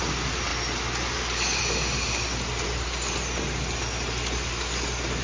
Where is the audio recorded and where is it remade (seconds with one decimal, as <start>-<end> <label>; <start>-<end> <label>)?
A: 0.0-5.2 recorded

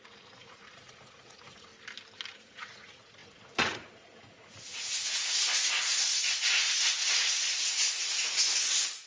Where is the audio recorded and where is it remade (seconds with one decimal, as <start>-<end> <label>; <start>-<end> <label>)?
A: 0.0-1.7 remade; 1.7-2.4 recorded; 2.4-9.1 remade

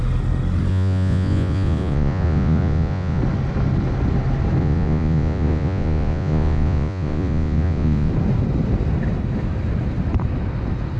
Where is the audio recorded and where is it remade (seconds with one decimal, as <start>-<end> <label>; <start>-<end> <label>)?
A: 0.0-0.7 recorded; 0.7-3.2 remade; 3.2-4.6 recorded; 4.6-8.1 remade; 8.1-11.0 recorded

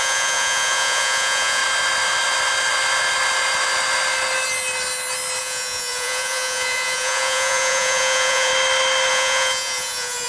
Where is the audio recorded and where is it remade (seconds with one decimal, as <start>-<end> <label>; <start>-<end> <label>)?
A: 0.0-1.6 remade; 1.6-5.4 recorded; 5.4-8.5 remade; 8.5-9.1 recorded; 9.1-10.3 remade

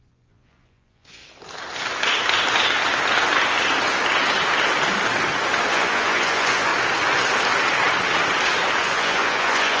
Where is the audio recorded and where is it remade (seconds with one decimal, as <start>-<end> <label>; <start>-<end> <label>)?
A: 0.0-1.2 remade; 1.2-5.7 recorded; 5.7-6.7 remade; 6.7-8.8 recorded; 8.8-9.8 remade

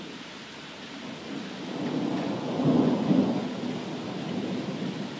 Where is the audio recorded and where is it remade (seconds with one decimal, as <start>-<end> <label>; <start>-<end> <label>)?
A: 0.0-2.1 recorded; 2.1-3.5 remade; 3.5-5.2 recorded

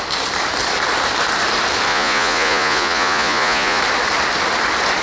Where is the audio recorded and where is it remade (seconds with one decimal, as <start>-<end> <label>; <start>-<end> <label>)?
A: 0.0-1.9 recorded; 1.9-3.8 remade; 3.8-5.0 recorded